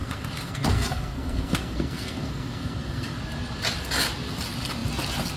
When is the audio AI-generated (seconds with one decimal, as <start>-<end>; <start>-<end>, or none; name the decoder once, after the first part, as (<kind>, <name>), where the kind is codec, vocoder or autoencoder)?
0.0-3.2 (codec, SNAC)